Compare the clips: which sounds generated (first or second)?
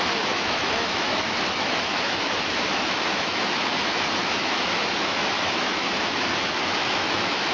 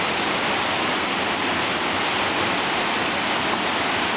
first